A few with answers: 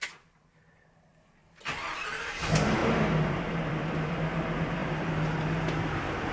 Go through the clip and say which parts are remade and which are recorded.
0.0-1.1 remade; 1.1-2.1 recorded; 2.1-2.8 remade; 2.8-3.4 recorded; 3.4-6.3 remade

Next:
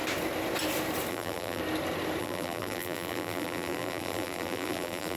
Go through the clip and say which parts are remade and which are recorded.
0.0-1.1 recorded; 1.1-1.6 remade; 1.6-2.2 recorded; 2.2-5.2 remade